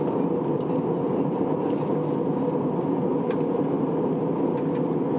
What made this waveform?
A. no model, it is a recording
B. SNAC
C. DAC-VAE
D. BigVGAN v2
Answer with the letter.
A